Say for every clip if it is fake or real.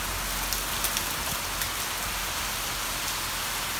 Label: real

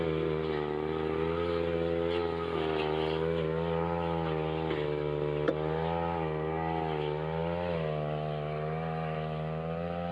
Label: real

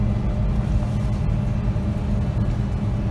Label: real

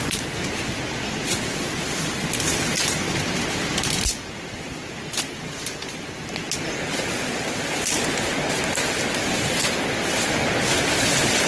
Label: real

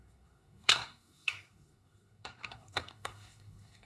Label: fake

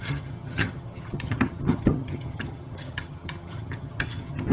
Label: fake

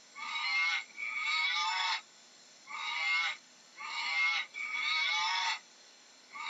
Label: fake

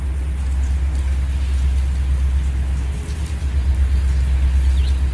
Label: real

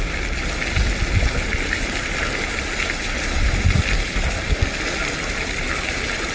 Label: real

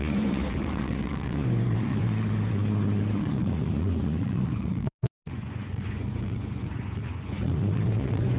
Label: fake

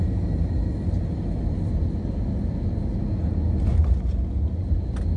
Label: real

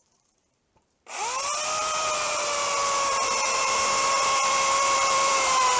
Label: fake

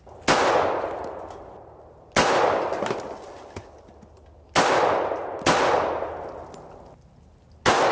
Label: real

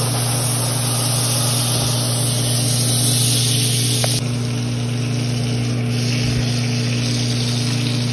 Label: real